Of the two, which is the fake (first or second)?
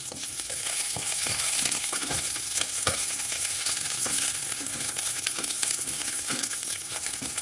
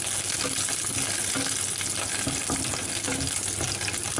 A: first